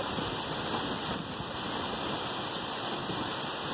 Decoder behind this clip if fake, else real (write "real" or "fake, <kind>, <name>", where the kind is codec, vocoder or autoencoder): real